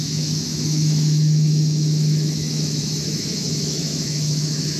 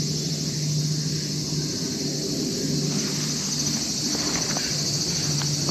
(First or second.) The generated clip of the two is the first